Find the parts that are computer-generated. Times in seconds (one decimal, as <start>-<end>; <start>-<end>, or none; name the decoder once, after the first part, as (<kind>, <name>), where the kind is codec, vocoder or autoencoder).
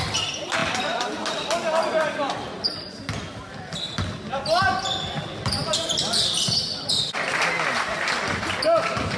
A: none